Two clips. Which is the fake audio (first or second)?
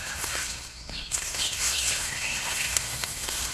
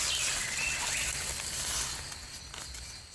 first